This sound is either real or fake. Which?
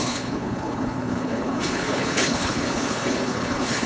fake